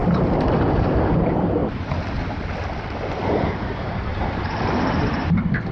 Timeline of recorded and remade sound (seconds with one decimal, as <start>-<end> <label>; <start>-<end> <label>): 0.0-0.8 recorded; 0.8-1.6 remade; 1.6-3.5 recorded; 3.5-5.7 remade